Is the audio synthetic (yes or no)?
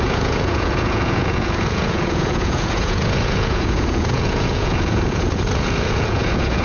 yes